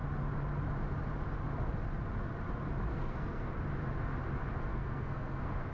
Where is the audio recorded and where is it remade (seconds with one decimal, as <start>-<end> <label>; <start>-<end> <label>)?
0.0-2.9 recorded; 2.9-3.5 remade; 3.5-4.7 recorded; 4.7-5.7 remade